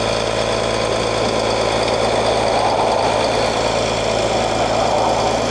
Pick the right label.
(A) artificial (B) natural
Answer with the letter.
B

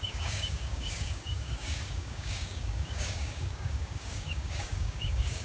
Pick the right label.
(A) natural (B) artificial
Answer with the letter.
B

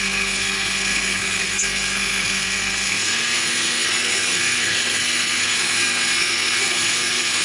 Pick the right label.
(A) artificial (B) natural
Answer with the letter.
A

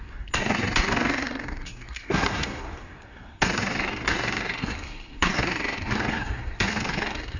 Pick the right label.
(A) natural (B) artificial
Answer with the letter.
B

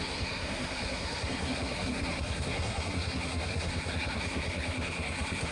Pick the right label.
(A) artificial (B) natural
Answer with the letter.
A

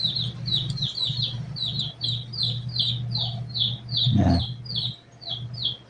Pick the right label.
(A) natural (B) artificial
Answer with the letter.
A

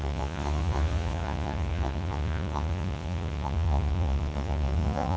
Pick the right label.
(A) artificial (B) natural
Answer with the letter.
A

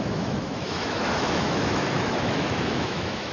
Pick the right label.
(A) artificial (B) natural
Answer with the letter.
A